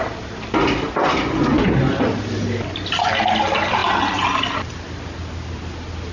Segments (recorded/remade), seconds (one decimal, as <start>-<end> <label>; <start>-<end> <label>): 0.0-6.1 recorded